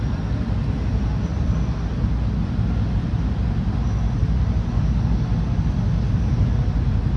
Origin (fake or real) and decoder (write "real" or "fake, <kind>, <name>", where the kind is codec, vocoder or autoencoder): real